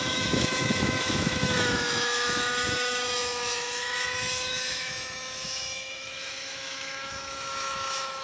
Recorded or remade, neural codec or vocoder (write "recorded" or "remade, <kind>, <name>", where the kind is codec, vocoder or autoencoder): remade, autoencoder, DAC-VAE